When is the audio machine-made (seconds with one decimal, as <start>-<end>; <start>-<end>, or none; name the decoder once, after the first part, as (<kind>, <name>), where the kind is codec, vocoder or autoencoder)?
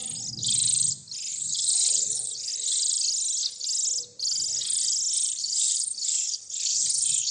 1.3-2.5 (codec, HILCodec); 5.4-7.3